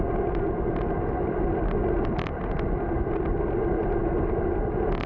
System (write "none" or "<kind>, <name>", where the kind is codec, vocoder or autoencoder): none